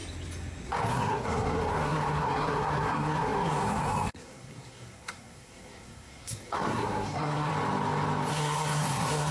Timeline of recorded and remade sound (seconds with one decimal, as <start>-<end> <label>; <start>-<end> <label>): 0.0-0.9 recorded; 0.9-7.5 remade; 7.5-8.3 recorded; 8.3-9.3 remade